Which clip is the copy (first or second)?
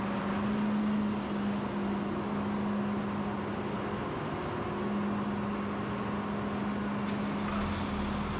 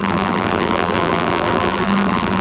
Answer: second